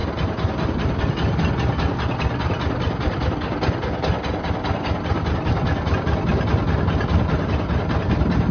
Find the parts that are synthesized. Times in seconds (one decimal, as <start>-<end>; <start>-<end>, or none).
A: none